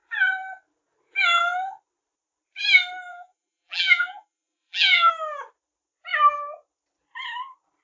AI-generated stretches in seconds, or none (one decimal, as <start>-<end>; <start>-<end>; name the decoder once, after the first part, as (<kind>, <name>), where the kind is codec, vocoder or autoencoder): 3.1-5.1 (vocoder, BigVGAN v2)

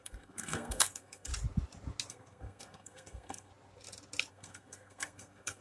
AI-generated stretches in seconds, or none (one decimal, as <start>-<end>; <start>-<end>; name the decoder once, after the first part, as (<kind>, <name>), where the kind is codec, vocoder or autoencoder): 0.0-1.3 (codec, SNAC); 2.1-3.5; 4.3-5.6

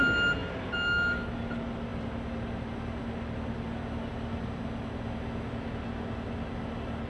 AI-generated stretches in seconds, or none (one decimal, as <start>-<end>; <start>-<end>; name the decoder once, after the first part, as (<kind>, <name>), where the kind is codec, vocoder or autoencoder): none